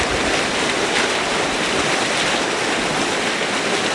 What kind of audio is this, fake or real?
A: real